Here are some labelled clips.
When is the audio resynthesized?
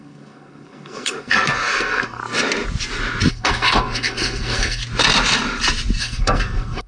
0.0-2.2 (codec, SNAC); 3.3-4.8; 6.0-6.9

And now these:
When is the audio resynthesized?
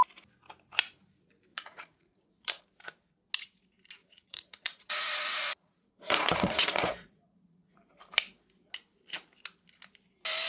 1.5-2.6 (vocoder, Vocos); 4.0-7.7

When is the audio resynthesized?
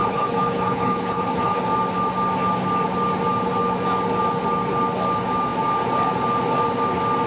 0.0-1.6 (codec, HILCodec)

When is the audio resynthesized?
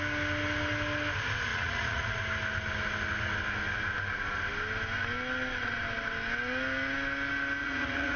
1.5-2.2 (vocoder, Vocos); 7.6-8.2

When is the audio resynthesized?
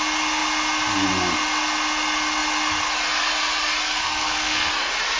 4.0-4.7 (codec, SNAC)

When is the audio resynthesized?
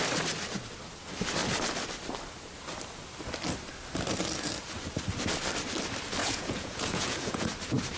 6.2-7.5 (vocoder, Vocos)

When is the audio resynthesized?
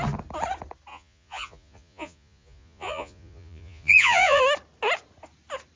0.9-4.4 (vocoder, Vocos)